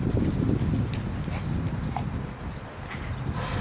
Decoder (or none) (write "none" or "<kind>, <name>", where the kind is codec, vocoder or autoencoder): none